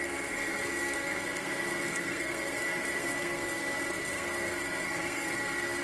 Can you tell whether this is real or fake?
fake